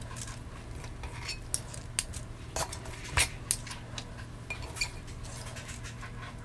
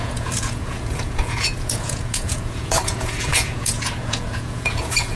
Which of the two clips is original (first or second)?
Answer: first